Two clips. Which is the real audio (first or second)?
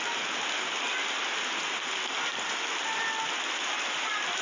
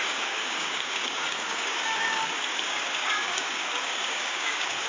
first